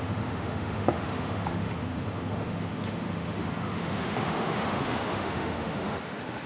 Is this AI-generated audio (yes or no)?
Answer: yes